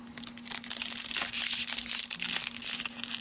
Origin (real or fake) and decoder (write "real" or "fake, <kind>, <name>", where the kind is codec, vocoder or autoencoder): real